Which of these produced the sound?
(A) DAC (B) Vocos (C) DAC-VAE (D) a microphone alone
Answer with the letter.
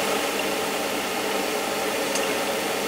D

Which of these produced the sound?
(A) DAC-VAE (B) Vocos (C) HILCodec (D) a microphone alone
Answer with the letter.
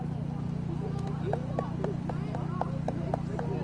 D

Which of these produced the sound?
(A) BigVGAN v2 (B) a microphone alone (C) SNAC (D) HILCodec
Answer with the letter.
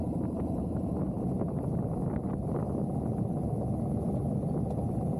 B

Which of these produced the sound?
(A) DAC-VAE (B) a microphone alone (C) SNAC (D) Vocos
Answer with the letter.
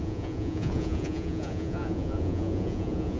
D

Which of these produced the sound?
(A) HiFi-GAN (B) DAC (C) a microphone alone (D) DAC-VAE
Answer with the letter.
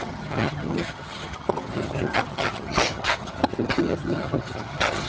A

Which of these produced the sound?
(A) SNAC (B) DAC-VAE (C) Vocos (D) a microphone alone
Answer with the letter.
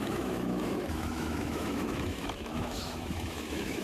B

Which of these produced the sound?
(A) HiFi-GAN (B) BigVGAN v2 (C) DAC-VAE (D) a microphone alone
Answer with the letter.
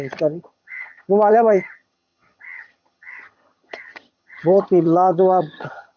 A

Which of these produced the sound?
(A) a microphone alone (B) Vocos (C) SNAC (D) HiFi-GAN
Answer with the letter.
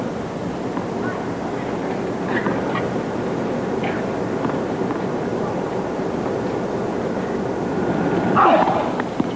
A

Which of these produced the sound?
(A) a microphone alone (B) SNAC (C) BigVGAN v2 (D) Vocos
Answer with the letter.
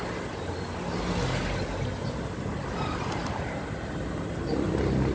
A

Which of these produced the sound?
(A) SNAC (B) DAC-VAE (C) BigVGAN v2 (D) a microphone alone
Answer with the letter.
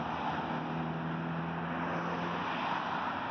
D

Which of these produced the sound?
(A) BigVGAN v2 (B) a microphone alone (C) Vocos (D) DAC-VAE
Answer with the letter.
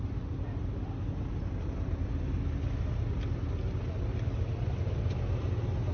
B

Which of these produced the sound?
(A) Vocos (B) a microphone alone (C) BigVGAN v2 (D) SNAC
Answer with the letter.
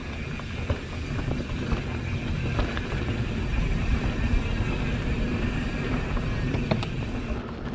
B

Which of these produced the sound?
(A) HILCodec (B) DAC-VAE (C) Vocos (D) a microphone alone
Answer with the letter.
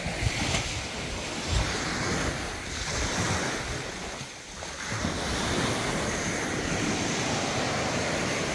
D